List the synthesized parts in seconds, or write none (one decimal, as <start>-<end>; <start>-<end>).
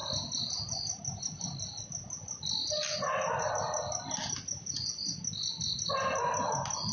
0.0-1.8; 2.6-3.5; 4.2-5.5